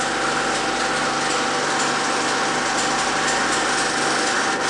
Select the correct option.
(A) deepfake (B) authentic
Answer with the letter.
B